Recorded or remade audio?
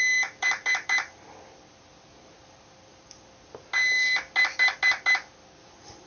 recorded